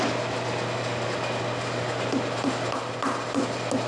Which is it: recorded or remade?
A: recorded